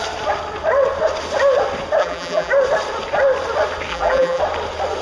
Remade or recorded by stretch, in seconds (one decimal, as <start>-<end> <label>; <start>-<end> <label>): 0.0-2.0 recorded; 2.0-2.5 remade; 2.5-3.9 recorded; 3.9-4.4 remade; 4.4-5.0 recorded